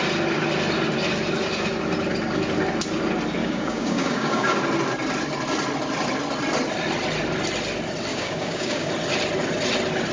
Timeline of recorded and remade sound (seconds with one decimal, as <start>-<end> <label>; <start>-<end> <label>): 0.0-3.4 recorded; 3.4-4.5 remade; 4.5-8.1 recorded; 8.1-8.9 remade; 8.9-10.1 recorded